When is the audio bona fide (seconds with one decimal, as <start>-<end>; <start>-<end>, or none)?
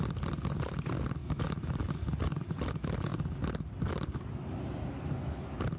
0.0-5.8